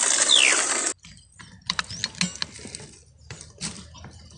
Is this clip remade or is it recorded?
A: recorded